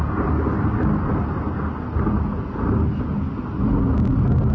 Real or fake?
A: real